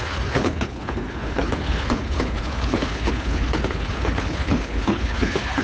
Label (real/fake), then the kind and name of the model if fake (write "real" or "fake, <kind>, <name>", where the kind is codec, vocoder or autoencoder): fake, codec, HILCodec